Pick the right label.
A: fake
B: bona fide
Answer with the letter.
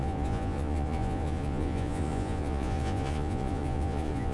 A